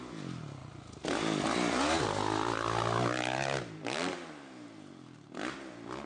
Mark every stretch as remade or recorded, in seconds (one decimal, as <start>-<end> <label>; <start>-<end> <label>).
0.0-6.1 recorded

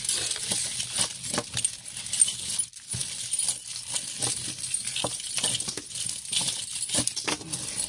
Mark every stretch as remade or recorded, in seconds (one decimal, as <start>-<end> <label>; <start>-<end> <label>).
0.0-3.0 recorded; 3.0-5.0 remade; 5.0-6.4 recorded; 6.4-7.9 remade

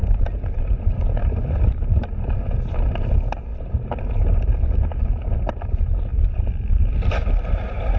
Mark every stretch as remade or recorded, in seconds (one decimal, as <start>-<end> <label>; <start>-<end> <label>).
0.0-2.1 remade; 2.1-6.1 recorded; 6.1-7.3 remade; 7.3-8.0 recorded

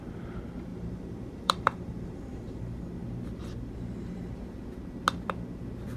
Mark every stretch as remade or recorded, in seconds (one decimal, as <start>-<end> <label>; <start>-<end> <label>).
0.0-0.7 recorded; 0.7-2.2 remade; 2.2-6.0 recorded

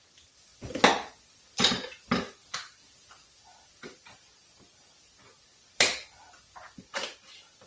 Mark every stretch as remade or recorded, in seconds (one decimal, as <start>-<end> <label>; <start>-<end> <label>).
0.0-2.4 recorded; 2.4-6.8 remade; 6.8-7.7 recorded

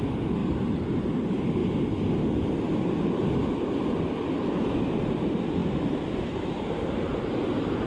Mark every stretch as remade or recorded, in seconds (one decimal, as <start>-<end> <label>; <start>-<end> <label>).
0.0-0.4 remade; 0.4-1.2 recorded; 1.2-1.6 remade; 1.6-4.6 recorded; 4.6-5.6 remade; 5.6-6.2 recorded; 6.2-7.1 remade; 7.1-7.9 recorded